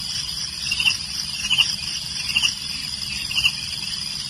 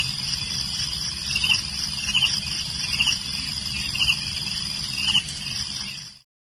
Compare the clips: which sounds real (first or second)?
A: second